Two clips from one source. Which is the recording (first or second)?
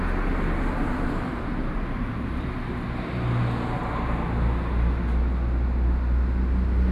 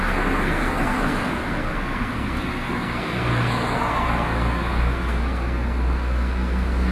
first